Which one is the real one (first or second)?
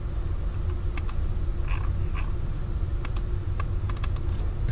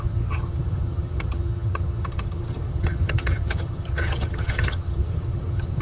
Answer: first